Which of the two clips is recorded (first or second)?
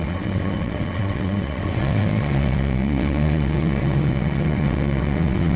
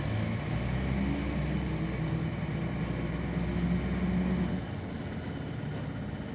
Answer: second